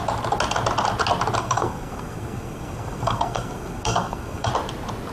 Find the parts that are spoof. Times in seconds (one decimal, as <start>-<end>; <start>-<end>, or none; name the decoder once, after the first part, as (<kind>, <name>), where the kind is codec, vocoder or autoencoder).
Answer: 1.4-4.5 (codec, SNAC)